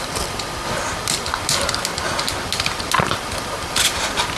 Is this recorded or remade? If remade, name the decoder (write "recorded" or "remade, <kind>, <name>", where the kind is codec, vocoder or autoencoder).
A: recorded